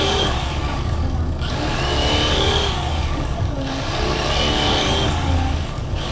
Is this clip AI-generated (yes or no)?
yes